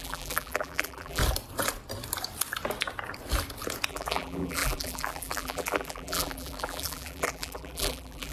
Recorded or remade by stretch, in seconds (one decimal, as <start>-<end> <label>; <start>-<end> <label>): 0.0-1.2 remade; 1.2-3.9 recorded; 3.9-8.3 remade